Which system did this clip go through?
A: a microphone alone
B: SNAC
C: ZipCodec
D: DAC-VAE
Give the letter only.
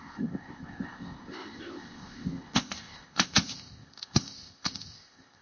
C